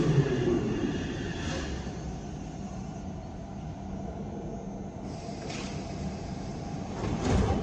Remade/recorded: recorded